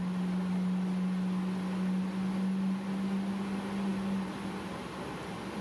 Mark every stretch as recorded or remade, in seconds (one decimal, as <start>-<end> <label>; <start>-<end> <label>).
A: 0.0-5.6 recorded